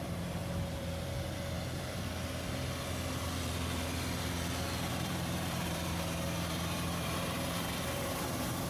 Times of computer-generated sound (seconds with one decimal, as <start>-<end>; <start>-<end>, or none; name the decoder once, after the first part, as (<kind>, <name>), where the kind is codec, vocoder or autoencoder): 0.0-0.4 (vocoder, BigVGAN v2); 4.9-8.7